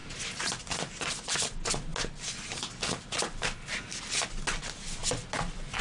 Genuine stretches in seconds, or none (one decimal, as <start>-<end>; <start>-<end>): 0.0-5.8